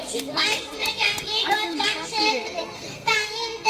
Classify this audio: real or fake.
fake